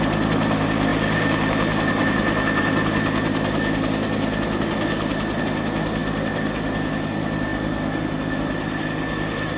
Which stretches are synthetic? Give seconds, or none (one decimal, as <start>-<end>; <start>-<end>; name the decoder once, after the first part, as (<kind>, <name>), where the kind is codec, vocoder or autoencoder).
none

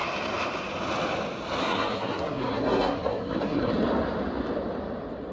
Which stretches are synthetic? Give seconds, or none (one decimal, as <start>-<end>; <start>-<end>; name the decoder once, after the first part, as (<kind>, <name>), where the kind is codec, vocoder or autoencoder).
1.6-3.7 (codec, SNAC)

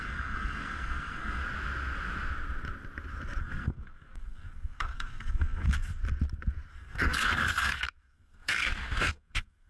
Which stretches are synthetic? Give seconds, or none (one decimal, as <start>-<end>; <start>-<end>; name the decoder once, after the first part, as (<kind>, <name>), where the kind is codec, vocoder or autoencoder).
0.0-1.4 (codec, SNAC); 3.4-6.0; 6.7-9.7